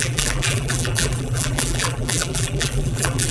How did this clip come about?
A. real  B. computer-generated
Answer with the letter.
B